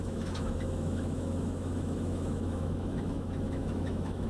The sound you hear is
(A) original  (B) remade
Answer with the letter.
B